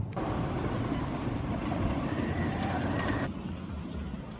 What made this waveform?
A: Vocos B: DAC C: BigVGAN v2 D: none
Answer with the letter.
D